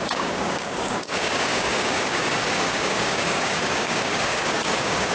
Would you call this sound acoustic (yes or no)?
no